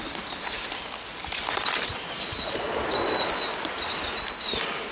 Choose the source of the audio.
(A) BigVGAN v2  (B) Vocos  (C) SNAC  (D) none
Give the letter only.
D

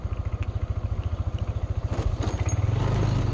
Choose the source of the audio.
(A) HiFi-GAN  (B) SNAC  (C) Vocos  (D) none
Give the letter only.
D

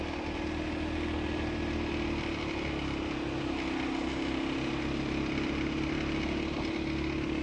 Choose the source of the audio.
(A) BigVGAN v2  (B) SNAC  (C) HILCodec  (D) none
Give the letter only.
D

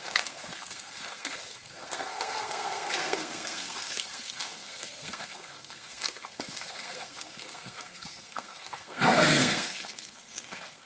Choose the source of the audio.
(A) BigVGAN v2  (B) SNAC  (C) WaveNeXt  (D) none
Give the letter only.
B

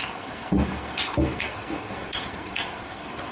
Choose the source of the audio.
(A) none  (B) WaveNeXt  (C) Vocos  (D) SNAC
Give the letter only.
D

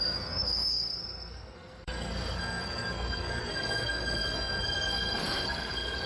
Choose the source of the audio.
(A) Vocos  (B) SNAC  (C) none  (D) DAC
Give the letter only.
B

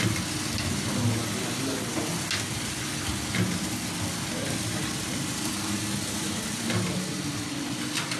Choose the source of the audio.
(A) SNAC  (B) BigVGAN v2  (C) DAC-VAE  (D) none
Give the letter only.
D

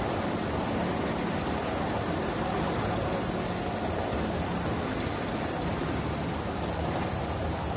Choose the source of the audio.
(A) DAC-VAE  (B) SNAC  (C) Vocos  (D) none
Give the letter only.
D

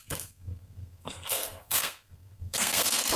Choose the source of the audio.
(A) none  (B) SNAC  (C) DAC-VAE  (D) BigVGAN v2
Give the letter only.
B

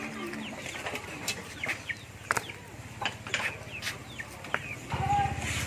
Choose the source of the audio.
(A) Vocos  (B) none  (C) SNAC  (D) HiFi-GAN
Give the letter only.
B